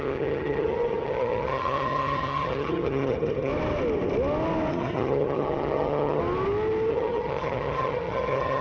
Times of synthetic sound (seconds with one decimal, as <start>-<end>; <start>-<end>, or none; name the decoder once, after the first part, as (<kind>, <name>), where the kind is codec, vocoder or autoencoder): 0.0-3.5 (vocoder, HiFi-GAN); 4.7-6.2; 6.9-8.6